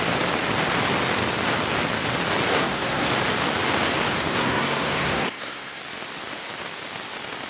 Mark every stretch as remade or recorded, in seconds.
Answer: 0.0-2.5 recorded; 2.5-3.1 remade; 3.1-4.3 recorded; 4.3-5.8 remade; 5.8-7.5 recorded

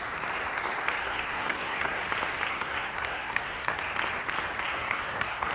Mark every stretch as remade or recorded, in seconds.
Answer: 0.0-1.0 recorded; 1.0-2.0 remade; 2.0-2.5 recorded; 2.5-3.8 remade; 3.8-4.7 recorded; 4.7-5.5 remade

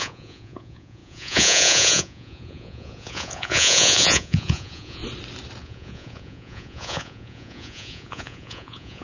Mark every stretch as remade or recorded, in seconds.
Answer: 0.0-5.0 remade; 5.0-5.6 recorded; 5.6-9.0 remade

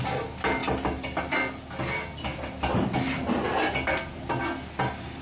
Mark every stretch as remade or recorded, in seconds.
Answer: 0.0-5.2 recorded

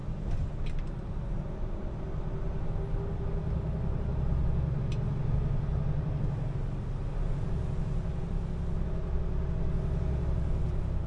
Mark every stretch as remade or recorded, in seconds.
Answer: 0.0-11.1 recorded

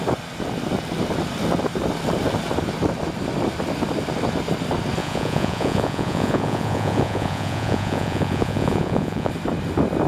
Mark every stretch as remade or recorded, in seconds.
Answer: 0.0-5.0 recorded; 5.0-9.3 remade; 9.3-10.1 recorded